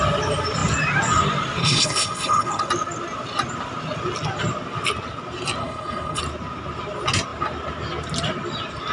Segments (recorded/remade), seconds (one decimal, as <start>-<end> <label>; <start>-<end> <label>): 0.0-1.6 recorded; 1.6-2.7 remade; 2.7-5.6 recorded; 5.6-6.2 remade; 6.2-8.9 recorded

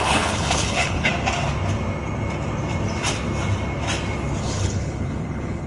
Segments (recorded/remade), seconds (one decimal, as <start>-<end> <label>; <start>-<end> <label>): 0.0-1.1 remade; 1.1-4.4 recorded; 4.4-5.7 remade